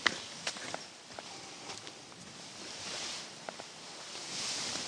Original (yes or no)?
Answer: yes